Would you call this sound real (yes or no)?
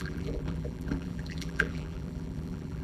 no